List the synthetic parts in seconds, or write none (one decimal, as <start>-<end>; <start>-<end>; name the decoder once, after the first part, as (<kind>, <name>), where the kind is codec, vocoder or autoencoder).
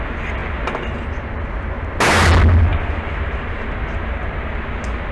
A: 2.7-3.7 (vocoder, BigVGAN v2)